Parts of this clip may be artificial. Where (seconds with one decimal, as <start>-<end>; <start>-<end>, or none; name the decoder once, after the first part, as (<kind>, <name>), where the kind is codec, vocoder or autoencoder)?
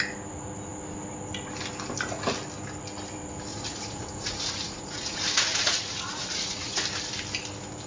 3.5-6.8 (vocoder, Vocos)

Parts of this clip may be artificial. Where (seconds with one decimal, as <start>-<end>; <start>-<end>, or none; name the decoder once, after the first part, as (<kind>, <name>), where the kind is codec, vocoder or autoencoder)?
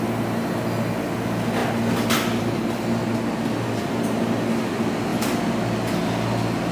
none